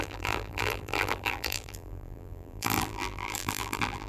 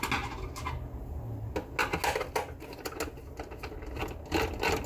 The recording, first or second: second